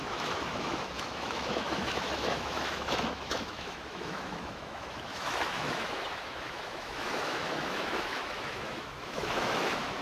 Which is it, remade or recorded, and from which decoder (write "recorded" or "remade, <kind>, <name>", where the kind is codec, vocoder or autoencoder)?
remade, autoencoder, DAC-VAE